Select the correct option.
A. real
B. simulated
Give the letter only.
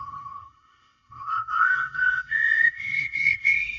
B